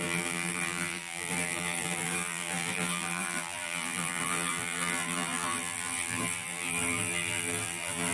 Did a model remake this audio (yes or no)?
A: yes